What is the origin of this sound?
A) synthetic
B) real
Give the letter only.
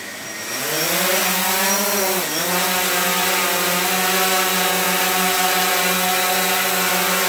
B